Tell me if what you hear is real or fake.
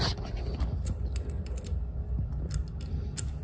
real